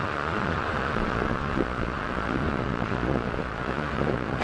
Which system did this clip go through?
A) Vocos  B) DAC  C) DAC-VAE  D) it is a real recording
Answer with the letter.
A